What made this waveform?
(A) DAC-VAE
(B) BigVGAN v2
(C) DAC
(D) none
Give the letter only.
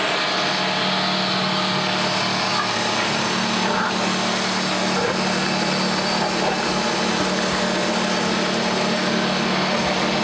D